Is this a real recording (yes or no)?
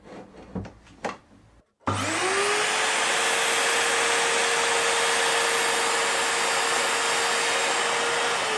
yes